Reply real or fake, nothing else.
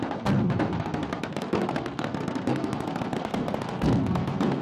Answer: fake